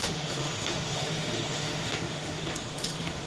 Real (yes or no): no